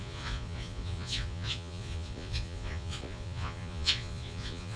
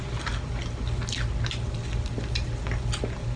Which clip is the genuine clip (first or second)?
second